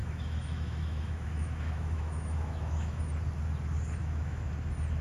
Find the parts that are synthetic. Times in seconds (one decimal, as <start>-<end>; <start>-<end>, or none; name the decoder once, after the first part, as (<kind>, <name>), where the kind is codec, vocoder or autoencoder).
0.0-3.0 (autoencoder, DAC-VAE); 4.0-4.5